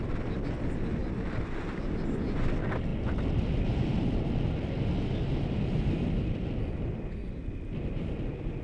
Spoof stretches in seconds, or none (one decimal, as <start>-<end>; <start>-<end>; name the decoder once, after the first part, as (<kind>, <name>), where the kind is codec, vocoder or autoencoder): none